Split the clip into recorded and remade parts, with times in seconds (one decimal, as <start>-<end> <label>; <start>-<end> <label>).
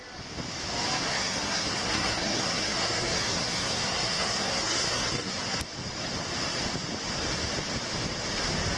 0.0-1.1 recorded; 1.1-5.6 remade; 5.6-8.8 recorded